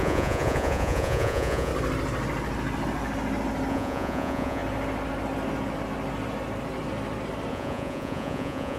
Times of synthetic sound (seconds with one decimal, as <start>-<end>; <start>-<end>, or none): 0.0-1.7; 3.7-4.6; 7.5-8.8